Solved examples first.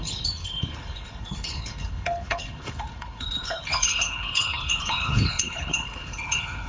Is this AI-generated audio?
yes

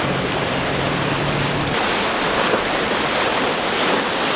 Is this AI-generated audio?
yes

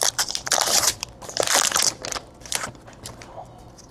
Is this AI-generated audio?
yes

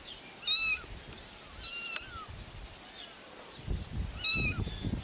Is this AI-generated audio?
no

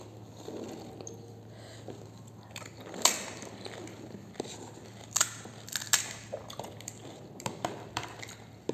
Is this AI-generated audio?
no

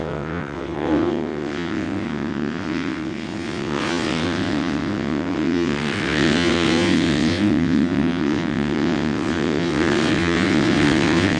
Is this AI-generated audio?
yes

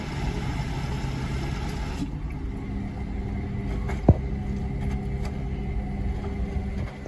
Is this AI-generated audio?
no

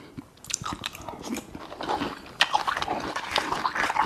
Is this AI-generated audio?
no